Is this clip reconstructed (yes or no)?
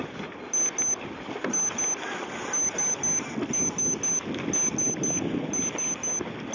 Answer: no